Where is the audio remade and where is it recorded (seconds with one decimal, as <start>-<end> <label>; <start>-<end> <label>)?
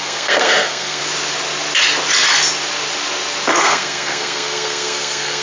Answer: 0.0-1.0 remade; 1.0-3.5 recorded; 3.5-5.4 remade